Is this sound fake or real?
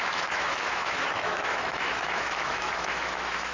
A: fake